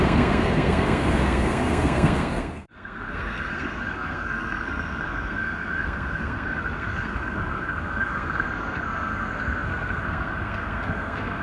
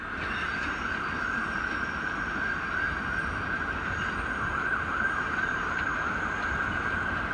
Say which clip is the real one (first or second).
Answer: second